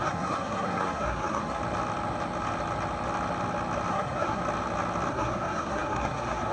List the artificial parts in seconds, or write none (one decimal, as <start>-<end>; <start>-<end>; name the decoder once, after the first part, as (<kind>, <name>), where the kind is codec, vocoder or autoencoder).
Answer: 0.0-1.6 (codec, SNAC); 3.9-4.4; 5.1-6.5